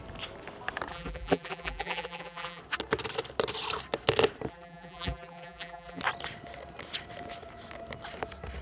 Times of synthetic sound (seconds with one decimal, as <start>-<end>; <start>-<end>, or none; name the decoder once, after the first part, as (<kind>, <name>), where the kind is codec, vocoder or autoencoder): 0.9-2.6 (vocoder, BigVGAN v2); 4.5-6.0

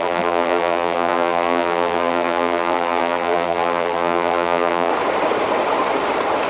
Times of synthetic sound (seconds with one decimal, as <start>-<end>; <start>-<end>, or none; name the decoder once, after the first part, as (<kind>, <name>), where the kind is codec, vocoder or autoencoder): 0.0-4.9 (vocoder, BigVGAN v2)